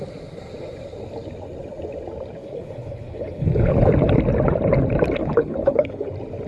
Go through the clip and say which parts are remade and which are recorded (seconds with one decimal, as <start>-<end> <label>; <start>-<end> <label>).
0.0-2.4 recorded; 2.4-3.7 remade; 3.7-5.2 recorded; 5.2-6.1 remade; 6.1-6.5 recorded